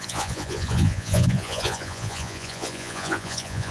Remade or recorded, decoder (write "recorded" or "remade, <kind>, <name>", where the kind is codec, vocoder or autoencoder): remade, vocoder, Vocos